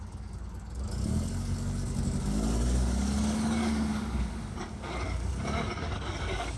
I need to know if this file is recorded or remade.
remade